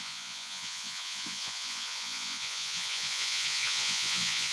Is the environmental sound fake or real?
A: fake